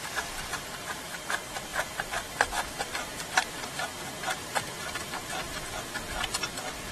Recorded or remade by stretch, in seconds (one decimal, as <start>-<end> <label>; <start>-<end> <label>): 0.0-1.7 recorded; 1.7-5.8 remade; 5.8-6.9 recorded